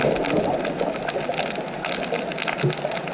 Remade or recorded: recorded